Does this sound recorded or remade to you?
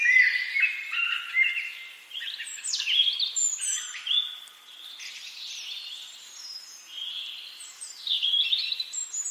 remade